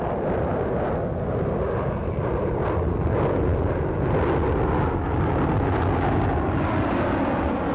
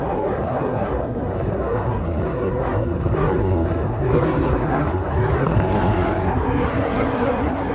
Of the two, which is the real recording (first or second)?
first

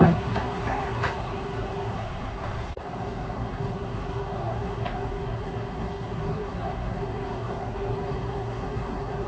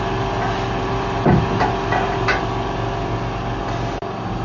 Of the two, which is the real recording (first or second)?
second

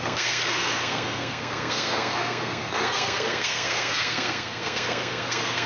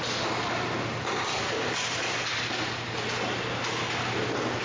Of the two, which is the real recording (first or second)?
second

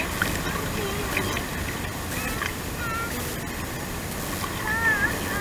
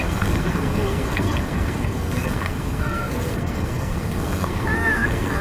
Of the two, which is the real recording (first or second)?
first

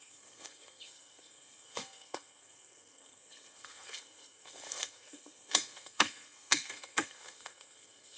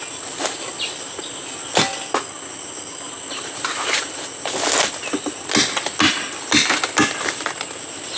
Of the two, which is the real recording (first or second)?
second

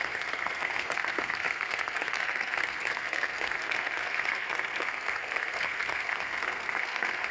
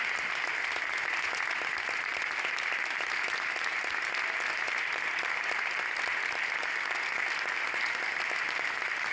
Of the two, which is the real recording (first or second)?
second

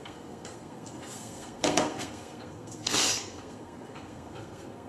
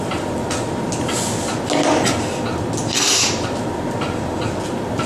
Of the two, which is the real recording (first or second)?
second